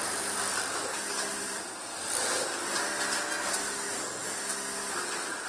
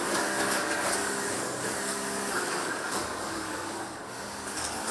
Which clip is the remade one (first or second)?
second